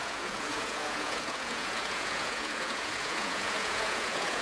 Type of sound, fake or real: fake